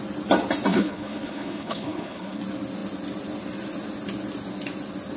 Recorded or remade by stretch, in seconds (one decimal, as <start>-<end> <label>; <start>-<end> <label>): 0.0-0.7 recorded; 0.7-2.4 remade; 2.4-5.2 recorded